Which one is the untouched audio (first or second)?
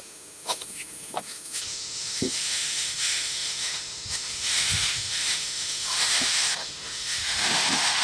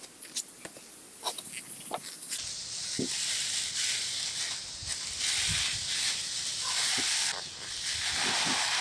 second